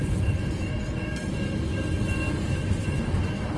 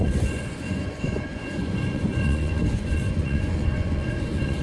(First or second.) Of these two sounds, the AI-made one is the second